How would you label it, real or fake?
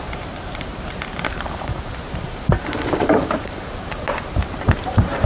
fake